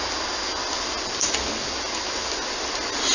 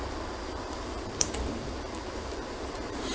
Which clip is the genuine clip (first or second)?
first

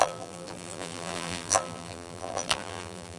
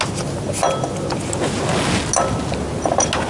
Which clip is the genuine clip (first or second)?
second